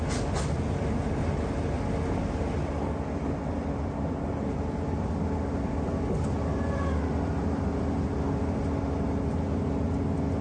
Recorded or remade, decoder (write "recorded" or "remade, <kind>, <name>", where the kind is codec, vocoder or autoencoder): recorded